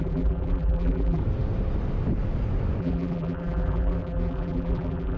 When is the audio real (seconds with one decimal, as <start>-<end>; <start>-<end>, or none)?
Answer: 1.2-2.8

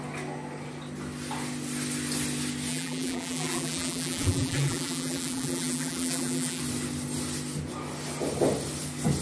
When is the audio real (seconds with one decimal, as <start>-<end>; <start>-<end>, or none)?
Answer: 0.0-2.7; 6.6-9.2

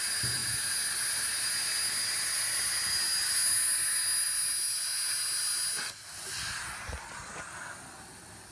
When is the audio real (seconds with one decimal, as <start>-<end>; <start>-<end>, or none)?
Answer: 0.0-8.5

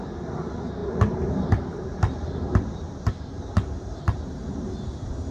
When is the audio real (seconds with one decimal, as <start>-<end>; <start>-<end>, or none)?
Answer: 0.0-0.8; 4.0-5.3

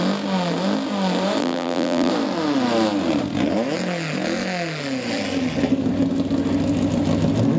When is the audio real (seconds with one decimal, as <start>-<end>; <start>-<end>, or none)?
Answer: 0.0-1.4; 2.1-7.6

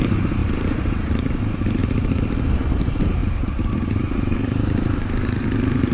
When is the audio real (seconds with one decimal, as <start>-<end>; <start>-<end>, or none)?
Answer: 1.8-2.7